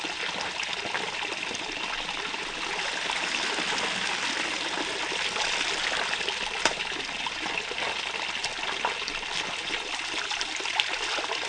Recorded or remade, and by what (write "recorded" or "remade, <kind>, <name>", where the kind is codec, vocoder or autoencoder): recorded